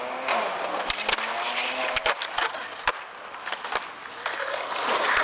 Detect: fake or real real